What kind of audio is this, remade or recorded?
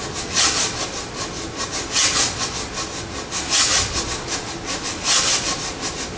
recorded